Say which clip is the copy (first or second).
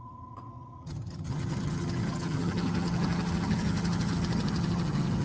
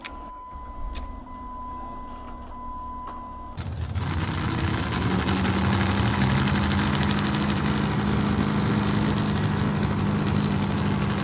first